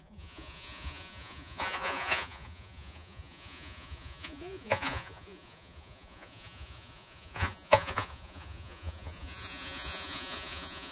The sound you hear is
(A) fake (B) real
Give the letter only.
A